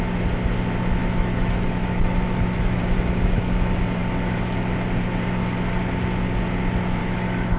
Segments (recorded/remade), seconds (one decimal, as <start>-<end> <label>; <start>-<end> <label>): 0.0-1.0 recorded; 1.0-2.8 remade; 2.8-7.0 recorded; 7.0-7.6 remade